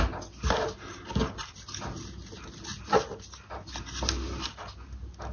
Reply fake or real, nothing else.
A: real